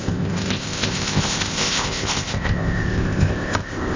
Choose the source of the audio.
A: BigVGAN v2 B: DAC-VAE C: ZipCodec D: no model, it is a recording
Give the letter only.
C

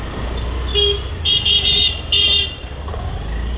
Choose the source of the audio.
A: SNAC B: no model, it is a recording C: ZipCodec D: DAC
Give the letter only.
B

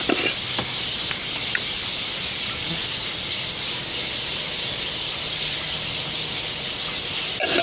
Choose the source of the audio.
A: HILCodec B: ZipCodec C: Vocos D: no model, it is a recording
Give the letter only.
D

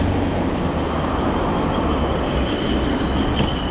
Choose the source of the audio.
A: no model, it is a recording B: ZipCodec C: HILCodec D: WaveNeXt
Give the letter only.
A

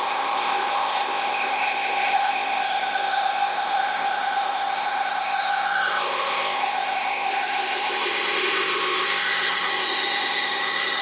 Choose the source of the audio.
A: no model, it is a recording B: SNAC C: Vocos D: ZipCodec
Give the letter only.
D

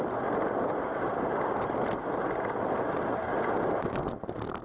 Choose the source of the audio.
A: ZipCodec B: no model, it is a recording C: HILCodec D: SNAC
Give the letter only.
B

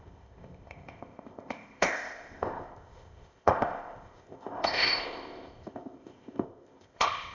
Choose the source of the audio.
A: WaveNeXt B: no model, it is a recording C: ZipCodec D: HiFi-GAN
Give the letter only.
C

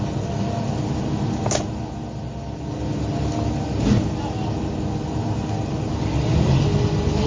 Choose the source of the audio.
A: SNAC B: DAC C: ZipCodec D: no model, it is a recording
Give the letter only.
D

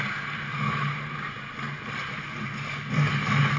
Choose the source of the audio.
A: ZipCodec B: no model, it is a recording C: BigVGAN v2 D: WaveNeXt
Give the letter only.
B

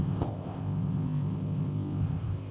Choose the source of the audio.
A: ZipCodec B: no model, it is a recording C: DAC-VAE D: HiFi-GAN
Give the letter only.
A